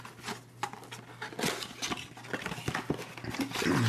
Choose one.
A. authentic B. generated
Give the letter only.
A